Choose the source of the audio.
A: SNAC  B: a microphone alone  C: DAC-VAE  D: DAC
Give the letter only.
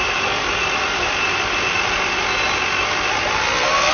B